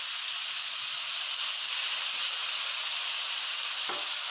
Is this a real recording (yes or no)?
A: yes